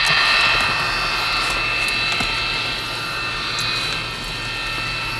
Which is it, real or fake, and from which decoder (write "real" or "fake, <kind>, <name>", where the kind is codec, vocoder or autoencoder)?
real